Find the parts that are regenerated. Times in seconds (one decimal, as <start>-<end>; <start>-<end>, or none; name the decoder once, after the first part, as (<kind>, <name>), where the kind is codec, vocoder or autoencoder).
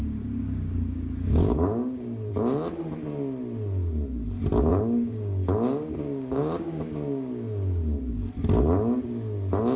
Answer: 0.0-2.3 (codec, DAC); 4.7-8.1